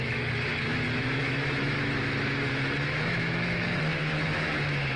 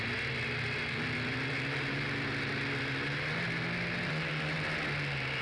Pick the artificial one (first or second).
first